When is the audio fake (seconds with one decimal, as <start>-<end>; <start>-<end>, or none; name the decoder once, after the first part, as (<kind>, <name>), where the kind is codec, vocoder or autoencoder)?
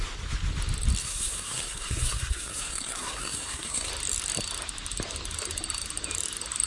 1.0-3.9 (codec, SNAC)